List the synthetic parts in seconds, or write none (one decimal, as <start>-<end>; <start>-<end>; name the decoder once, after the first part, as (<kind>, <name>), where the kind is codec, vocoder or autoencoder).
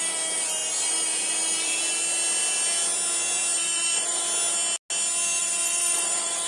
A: 3.5-4.2 (vocoder, BigVGAN v2); 5.4-6.5